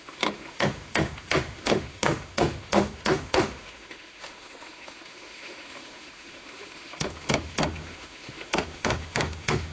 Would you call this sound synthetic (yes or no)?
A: yes